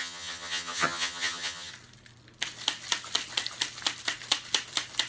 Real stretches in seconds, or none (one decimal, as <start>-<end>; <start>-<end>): 1.7-5.1

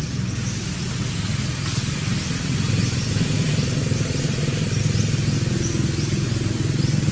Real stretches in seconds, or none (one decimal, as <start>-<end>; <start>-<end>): 0.0-7.1